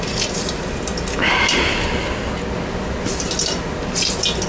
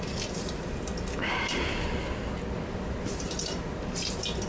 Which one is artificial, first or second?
second